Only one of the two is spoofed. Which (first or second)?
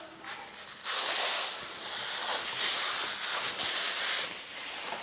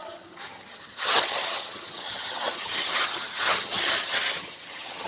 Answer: second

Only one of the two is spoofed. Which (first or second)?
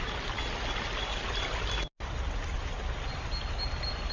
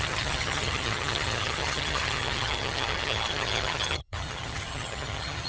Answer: second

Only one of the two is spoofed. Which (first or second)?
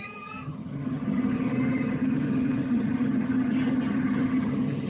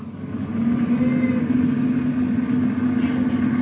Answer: first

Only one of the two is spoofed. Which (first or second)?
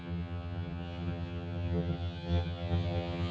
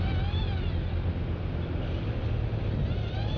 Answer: first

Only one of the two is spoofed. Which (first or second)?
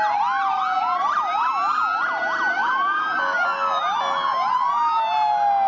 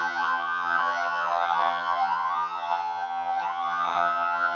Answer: second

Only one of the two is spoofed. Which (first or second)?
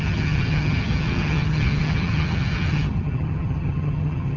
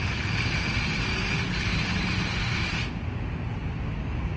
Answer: first